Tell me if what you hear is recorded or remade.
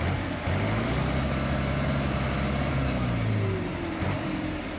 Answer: recorded